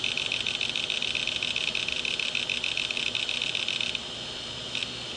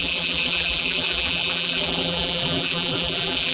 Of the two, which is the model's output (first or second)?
second